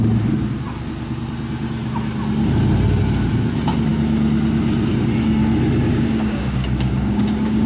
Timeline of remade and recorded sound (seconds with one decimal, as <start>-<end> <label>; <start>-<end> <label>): 0.0-5.9 recorded; 5.9-7.7 remade